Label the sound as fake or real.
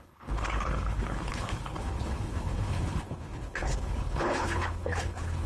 fake